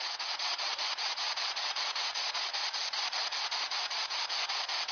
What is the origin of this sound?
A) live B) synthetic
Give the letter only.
B